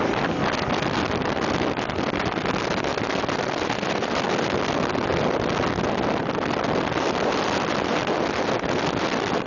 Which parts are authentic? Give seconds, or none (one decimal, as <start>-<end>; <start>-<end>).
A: 0.0-9.5